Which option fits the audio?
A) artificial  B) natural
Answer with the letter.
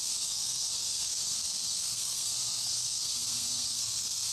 A